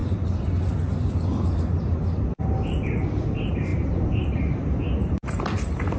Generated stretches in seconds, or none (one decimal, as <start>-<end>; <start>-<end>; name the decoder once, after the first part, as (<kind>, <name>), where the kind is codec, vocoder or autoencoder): 3.0-6.0 (vocoder, BigVGAN v2)